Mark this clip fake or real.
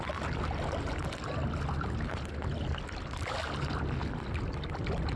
real